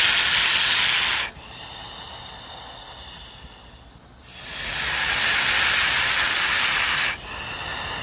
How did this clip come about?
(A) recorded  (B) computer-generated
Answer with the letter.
A